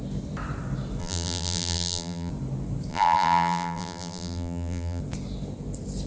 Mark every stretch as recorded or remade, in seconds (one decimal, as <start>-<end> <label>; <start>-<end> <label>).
0.0-1.0 recorded; 1.0-2.3 remade; 2.3-2.9 recorded; 2.9-5.0 remade; 5.0-6.1 recorded